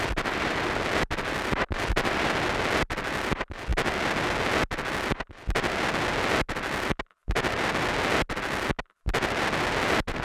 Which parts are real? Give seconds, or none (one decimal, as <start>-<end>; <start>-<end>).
0.0-10.2